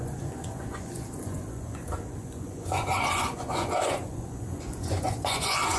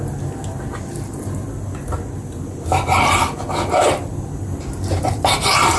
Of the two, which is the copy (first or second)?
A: first